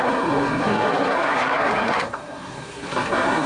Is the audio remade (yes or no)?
yes